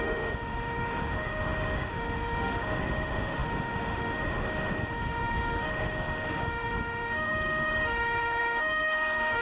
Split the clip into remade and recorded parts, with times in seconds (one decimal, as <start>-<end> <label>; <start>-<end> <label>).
0.0-9.4 remade